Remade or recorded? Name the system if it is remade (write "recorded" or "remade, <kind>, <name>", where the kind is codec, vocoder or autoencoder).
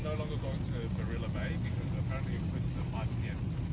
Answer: recorded